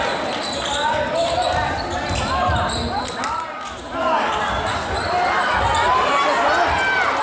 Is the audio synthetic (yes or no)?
no